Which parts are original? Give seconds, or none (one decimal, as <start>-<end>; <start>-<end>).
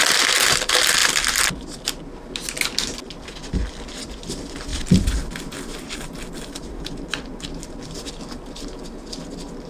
0.0-9.7